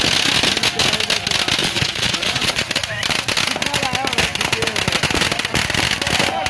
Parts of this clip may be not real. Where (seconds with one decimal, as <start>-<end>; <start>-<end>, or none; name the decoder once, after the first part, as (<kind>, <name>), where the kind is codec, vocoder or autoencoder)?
1.6-2.7 (vocoder, Vocos)